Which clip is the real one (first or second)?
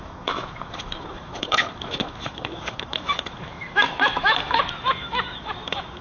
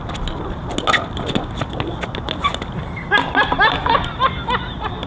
second